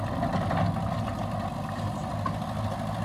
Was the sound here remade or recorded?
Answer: recorded